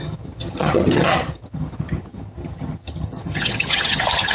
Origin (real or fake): fake